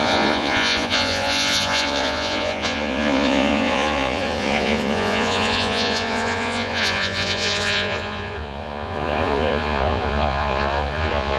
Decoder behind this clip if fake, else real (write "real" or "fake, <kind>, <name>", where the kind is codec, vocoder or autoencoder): fake, vocoder, Vocos